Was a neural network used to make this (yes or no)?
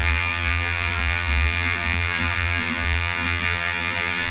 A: yes